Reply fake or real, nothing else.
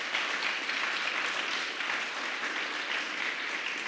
real